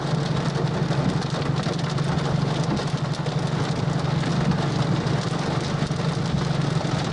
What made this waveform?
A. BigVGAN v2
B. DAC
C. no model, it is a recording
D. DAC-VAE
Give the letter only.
C